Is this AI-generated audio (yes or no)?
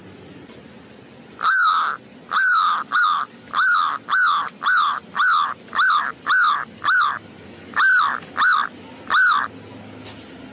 no